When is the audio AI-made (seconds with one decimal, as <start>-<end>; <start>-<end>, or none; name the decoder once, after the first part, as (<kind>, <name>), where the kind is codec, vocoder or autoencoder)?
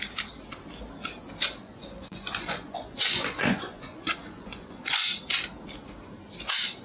1.6-5.2 (vocoder, Vocos)